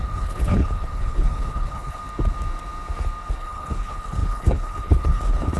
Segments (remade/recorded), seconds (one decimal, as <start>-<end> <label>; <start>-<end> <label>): 0.0-2.0 remade; 2.0-3.3 recorded; 3.3-5.6 remade

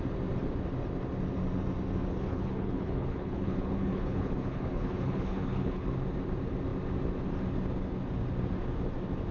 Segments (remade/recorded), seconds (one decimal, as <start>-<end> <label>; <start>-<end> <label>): 0.0-2.1 recorded; 2.1-5.9 remade; 5.9-9.3 recorded